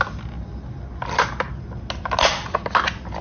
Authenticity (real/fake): real